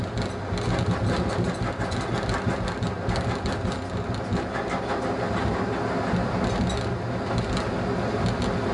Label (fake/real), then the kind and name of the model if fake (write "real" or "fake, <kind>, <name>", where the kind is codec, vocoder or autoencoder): real